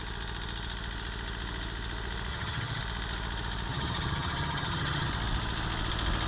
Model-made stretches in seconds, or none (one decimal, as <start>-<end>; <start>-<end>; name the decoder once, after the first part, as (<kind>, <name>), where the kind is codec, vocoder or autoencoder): 2.3-2.8 (vocoder, HiFi-GAN); 3.7-5.1

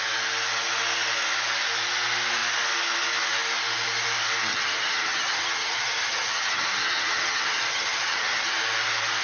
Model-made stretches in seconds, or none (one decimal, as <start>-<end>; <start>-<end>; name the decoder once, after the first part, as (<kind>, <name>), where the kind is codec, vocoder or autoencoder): 4.5-8.5 (vocoder, HiFi-GAN)

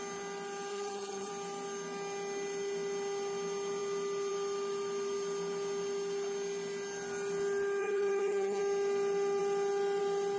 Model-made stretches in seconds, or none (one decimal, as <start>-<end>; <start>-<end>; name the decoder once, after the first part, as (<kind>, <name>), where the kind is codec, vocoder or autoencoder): 0.7-1.3 (vocoder, HiFi-GAN); 7.8-8.6

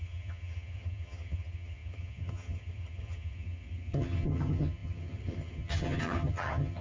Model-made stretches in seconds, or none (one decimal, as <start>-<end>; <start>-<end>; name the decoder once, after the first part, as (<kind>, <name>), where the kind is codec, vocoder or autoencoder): 0.0-6.8 (vocoder, HiFi-GAN)

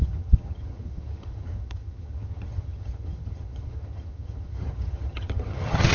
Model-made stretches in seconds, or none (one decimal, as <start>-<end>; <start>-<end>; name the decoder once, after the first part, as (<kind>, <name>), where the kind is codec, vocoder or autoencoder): 0.0-5.9 (vocoder, HiFi-GAN)

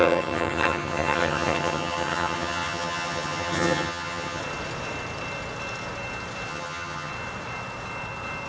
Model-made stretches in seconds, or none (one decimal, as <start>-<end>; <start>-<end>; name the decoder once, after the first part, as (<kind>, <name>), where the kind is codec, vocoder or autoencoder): 0.0-4.4 (vocoder, HiFi-GAN); 6.5-7.1

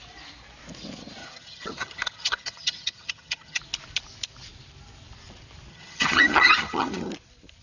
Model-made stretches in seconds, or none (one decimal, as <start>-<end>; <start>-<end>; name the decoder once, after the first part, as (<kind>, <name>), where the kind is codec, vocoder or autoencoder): 1.2-3.6 (vocoder, HiFi-GAN); 5.7-7.1